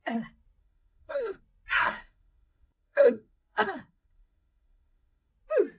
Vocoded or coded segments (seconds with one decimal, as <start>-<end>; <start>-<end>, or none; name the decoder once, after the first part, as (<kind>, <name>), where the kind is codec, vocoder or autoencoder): 0.6-1.4 (codec, SNAC); 1.8-5.3